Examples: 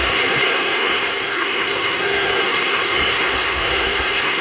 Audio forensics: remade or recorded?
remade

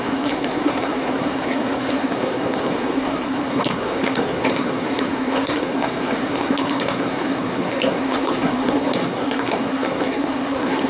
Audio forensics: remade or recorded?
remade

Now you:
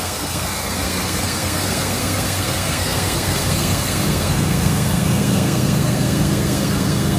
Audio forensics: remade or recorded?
remade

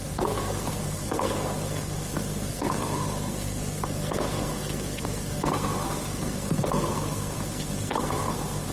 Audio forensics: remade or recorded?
remade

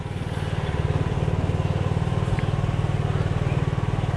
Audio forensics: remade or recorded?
recorded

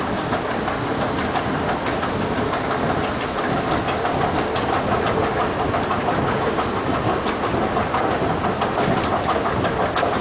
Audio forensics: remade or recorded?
recorded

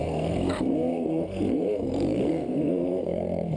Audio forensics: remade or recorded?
remade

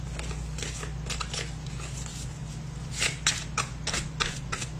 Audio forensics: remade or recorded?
recorded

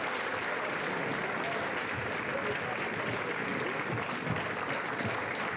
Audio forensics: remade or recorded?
recorded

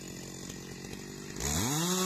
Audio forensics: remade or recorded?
recorded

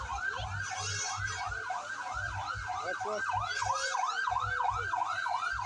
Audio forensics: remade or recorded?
recorded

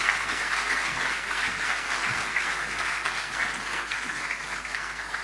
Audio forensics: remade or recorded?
remade